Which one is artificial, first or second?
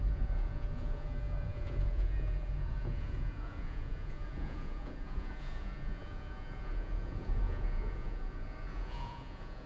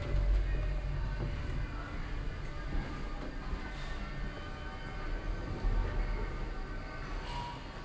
first